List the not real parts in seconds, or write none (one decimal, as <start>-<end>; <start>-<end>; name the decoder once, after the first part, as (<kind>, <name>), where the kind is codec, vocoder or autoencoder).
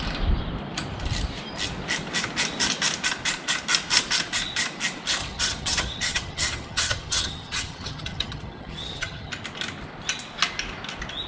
5.2-9.3 (vocoder, HiFi-GAN)